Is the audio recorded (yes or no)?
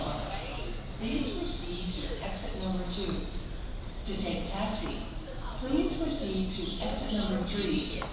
yes